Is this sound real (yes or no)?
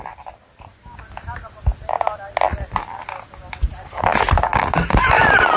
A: yes